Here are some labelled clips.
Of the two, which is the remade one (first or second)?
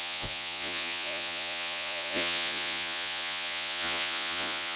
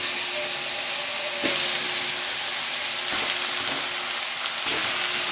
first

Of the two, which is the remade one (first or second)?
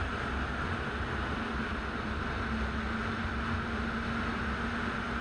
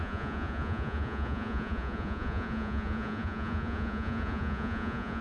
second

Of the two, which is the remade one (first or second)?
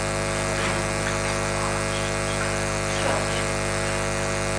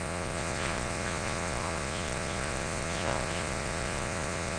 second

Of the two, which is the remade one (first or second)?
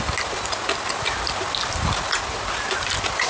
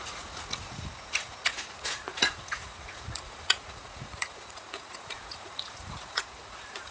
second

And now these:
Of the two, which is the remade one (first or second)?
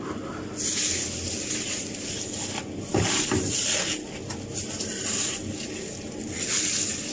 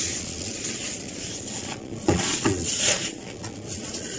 second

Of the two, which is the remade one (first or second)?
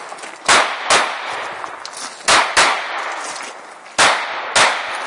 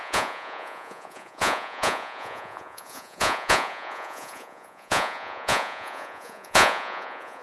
second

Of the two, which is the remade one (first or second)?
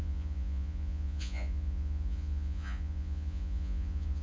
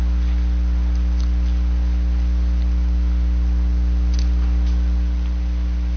first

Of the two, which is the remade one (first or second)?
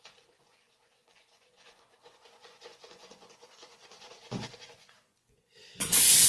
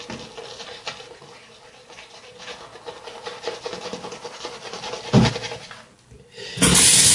first